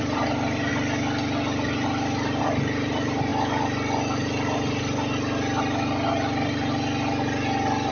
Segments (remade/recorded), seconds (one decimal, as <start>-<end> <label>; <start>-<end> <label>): 0.0-0.7 remade; 0.7-2.4 recorded; 2.4-3.3 remade; 3.3-7.9 recorded